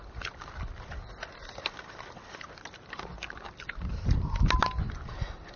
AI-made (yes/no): no